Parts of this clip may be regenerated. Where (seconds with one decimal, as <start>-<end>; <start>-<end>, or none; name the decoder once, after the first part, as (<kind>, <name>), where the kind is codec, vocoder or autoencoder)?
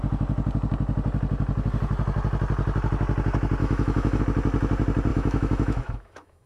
3.6-4.2 (autoencoder, DAC-VAE); 5.1-6.5